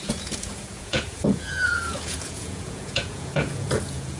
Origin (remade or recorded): remade